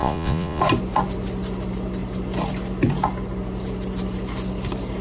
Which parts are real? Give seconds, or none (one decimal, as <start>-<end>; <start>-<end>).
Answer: 0.6-5.0